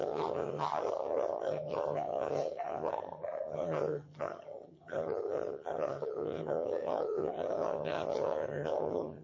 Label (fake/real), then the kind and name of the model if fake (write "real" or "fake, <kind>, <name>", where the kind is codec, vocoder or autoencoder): fake, vocoder, HiFi-GAN